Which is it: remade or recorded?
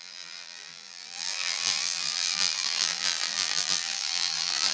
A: remade